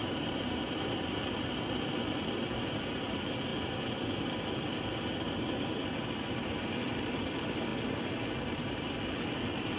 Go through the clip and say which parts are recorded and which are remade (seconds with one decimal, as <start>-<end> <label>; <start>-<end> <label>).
0.0-9.8 recorded